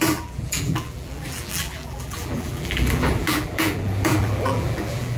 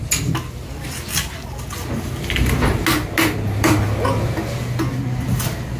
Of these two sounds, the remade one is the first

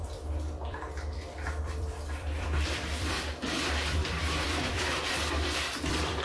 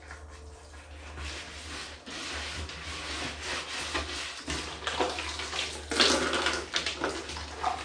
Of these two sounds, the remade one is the first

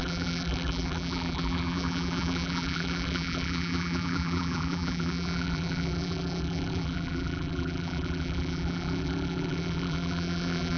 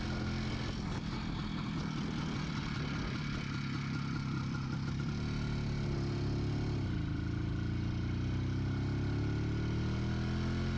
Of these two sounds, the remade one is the first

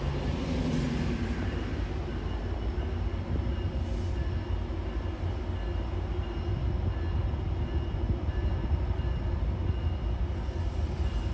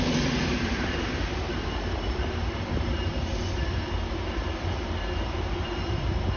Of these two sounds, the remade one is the second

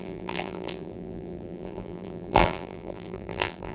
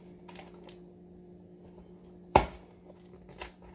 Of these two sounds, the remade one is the first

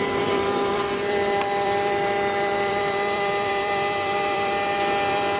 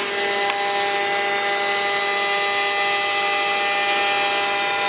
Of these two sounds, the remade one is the first